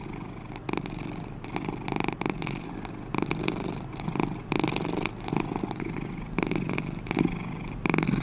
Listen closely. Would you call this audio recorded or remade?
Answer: recorded